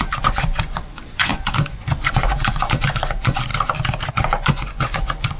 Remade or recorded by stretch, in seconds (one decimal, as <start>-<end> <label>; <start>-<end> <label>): 0.0-3.5 remade; 3.5-4.1 recorded; 4.1-5.4 remade